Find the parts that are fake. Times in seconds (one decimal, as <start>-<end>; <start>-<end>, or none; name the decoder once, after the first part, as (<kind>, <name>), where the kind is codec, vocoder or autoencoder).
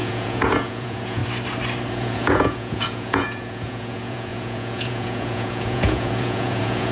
0.0-1.2 (vocoder, Vocos); 1.9-6.9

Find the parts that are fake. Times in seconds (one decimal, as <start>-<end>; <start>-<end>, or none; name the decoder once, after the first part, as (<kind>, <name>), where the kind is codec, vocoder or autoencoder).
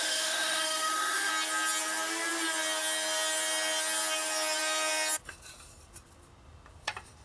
0.0-1.3 (autoencoder, DAC-VAE)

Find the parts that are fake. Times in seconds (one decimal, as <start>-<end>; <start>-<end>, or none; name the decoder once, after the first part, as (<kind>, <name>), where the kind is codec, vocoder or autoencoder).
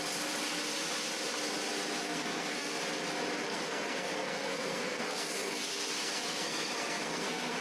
2.0-2.8 (codec, SNAC); 3.5-7.6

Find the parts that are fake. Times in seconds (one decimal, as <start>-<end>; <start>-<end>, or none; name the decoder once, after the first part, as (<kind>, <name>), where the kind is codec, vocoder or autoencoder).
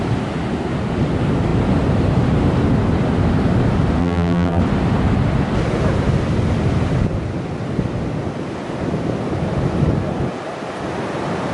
4.0-4.6 (vocoder, BigVGAN v2)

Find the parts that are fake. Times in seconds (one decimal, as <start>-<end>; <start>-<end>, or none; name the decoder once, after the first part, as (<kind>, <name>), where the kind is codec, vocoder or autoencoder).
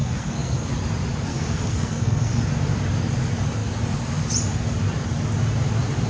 0.0-0.7 (codec, SNAC); 1.3-2.4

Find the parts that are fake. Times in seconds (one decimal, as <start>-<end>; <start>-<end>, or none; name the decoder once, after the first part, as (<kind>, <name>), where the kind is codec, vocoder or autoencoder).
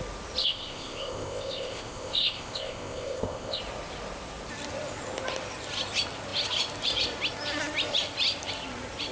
0.4-3.6 (codec, ZipCodec)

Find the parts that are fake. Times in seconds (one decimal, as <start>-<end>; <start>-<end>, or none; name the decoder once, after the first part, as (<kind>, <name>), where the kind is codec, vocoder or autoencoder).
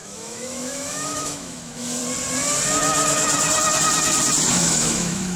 0.0-2.0 (autoencoder, DAC-VAE); 4.5-5.4